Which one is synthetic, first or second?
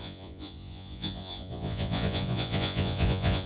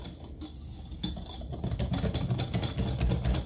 first